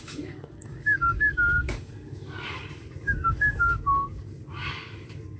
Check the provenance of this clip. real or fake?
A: fake